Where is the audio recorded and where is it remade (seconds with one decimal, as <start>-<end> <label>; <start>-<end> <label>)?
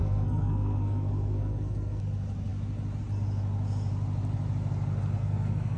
0.0-2.0 remade; 2.0-5.2 recorded; 5.2-5.8 remade